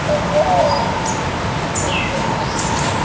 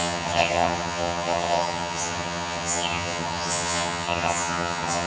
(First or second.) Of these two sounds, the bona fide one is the first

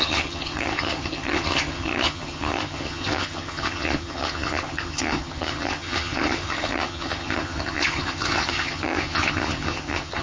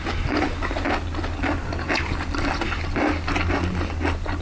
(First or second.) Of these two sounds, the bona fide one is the second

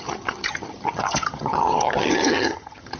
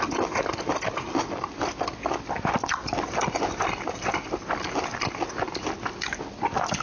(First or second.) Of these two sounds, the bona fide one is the second